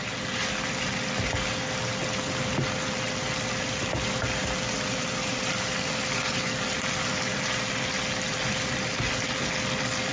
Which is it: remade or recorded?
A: recorded